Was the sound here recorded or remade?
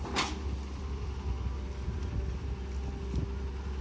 recorded